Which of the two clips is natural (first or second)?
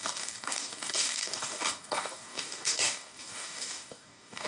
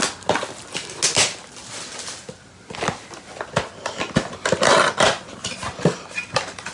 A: second